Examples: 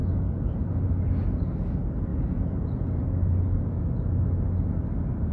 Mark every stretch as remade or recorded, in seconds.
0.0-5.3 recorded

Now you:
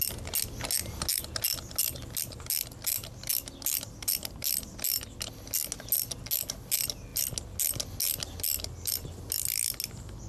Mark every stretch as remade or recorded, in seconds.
0.0-10.3 recorded

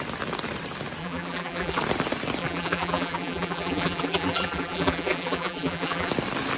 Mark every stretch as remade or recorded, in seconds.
0.0-1.0 recorded; 1.0-1.8 remade; 1.8-2.4 recorded; 2.4-6.1 remade; 6.1-6.6 recorded

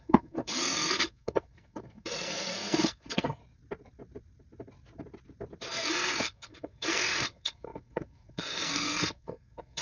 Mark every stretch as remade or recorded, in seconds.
0.0-3.4 remade; 3.4-5.7 recorded; 5.7-9.8 remade

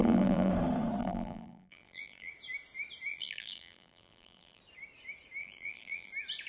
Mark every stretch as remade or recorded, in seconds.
0.0-0.5 remade; 0.5-1.0 recorded; 1.0-2.3 remade; 2.3-3.1 recorded; 3.1-4.6 remade; 4.6-5.4 recorded; 5.4-6.1 remade; 6.1-6.5 recorded

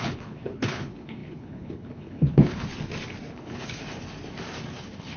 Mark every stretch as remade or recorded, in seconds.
0.0-2.7 remade; 2.7-3.3 recorded; 3.3-3.8 remade; 3.8-4.8 recorded; 4.8-5.2 remade

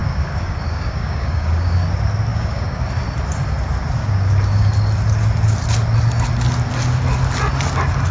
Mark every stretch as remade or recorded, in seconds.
0.0-1.9 remade; 1.9-2.3 recorded; 2.3-2.8 remade; 2.8-4.0 recorded; 4.0-4.7 remade; 4.7-8.1 recorded